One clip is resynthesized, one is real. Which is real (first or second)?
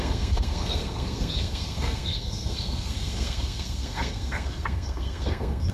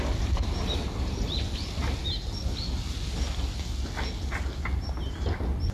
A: second